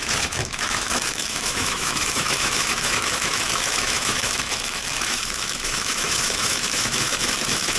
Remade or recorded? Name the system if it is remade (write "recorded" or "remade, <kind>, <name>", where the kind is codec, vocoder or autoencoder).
remade, autoencoder, DAC-VAE